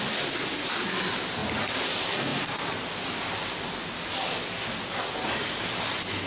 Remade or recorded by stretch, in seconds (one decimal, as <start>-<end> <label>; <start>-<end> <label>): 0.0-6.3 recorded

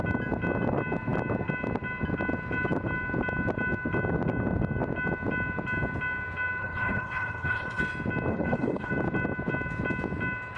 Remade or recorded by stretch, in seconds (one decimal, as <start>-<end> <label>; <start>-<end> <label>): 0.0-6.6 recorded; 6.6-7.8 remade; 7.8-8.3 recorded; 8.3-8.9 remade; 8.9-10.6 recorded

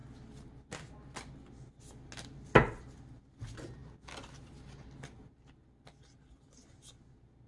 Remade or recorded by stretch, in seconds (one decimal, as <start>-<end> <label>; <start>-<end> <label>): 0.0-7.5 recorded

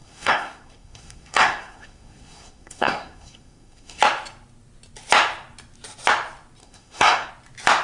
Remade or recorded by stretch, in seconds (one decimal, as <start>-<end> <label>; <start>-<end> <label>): 0.0-4.0 remade; 4.0-6.6 recorded; 6.6-7.3 remade; 7.3-7.8 recorded

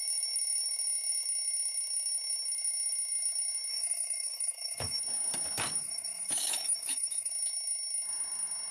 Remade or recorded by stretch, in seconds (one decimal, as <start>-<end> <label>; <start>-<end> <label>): 0.0-3.7 recorded; 3.7-5.0 remade; 5.0-5.8 recorded; 5.8-7.3 remade; 7.3-8.7 recorded

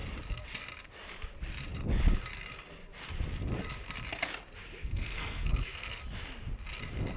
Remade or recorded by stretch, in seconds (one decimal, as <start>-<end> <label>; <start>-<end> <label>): 0.0-4.8 recorded; 4.8-6.0 remade; 6.0-7.2 recorded

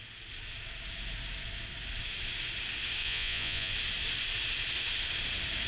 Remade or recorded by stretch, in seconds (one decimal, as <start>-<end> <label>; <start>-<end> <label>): 0.0-3.0 recorded; 3.0-3.7 remade; 3.7-5.7 recorded